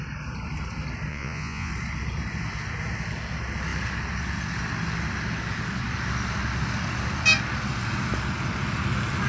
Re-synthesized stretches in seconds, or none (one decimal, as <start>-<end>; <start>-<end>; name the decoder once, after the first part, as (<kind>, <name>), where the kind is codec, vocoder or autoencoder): 1.1-1.7 (vocoder, Vocos)